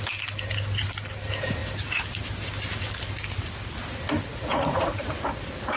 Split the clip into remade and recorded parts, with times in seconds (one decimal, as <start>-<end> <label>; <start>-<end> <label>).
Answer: 0.0-4.3 recorded; 4.3-5.1 remade; 5.1-5.8 recorded